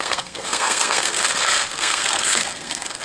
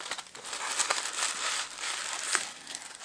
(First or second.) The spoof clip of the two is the first